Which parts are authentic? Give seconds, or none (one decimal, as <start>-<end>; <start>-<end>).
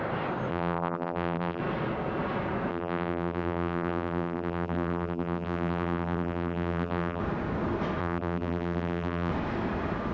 0.0-0.5; 1.6-2.7; 7.2-8.0; 9.3-10.1